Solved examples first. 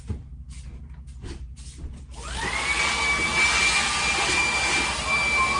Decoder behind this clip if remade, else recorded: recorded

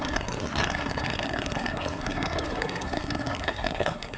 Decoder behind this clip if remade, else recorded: remade, codec, SNAC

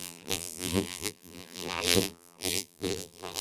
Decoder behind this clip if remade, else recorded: remade, vocoder, BigVGAN v2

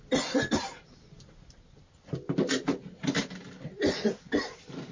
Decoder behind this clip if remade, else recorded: recorded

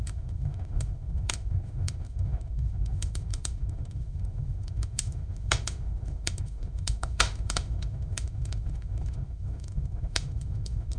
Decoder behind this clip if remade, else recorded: remade, autoencoder, DAC-VAE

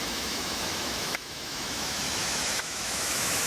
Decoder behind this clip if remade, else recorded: remade, autoencoder, DAC-VAE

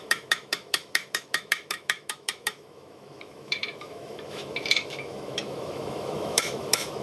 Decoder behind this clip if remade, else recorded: remade, autoencoder, DAC-VAE